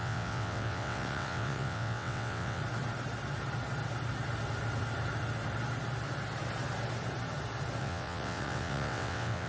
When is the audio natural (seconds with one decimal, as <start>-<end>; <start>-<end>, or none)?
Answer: 2.6-7.8